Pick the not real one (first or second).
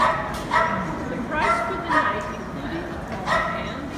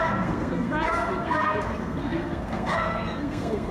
second